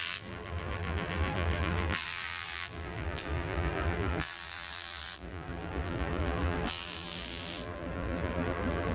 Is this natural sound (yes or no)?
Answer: no